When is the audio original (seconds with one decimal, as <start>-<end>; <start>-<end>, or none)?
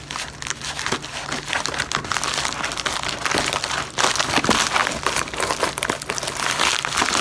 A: 0.0-7.2